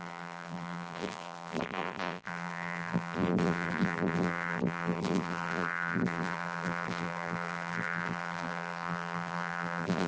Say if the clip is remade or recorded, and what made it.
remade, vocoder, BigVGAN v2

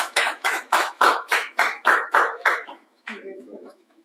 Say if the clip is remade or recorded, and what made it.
remade, autoencoder, DAC-VAE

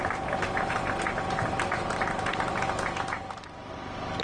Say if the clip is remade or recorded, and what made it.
recorded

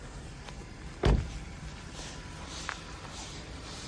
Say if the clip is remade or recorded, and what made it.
remade, vocoder, BigVGAN v2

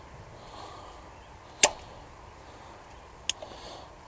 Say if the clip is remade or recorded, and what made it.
recorded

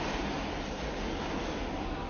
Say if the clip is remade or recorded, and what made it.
recorded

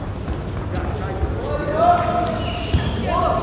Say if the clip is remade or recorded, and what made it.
recorded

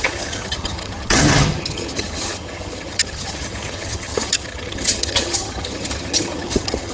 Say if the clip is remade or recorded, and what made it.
remade, vocoder, HiFi-GAN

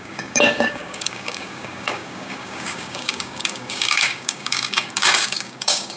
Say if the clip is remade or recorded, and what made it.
remade, codec, DAC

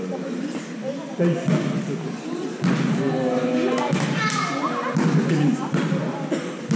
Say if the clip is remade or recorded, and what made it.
recorded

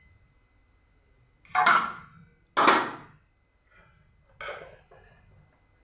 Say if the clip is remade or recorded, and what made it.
recorded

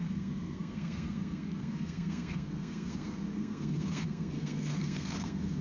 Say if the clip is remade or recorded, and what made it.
remade, codec, SNAC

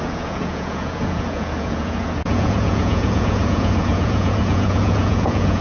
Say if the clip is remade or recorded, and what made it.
remade, vocoder, Vocos